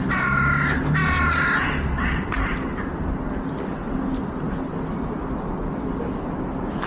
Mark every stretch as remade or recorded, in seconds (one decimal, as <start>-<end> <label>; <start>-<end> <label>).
0.0-6.9 recorded